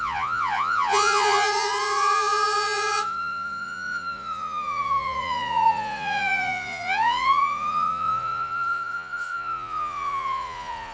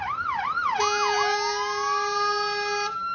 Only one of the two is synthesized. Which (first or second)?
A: first